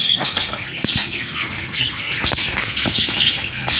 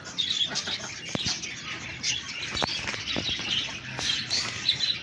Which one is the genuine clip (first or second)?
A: second